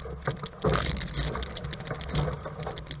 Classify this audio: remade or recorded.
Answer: recorded